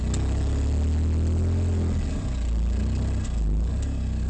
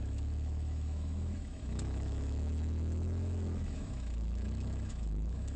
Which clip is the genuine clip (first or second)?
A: first